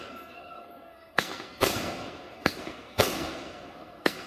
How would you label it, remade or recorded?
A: remade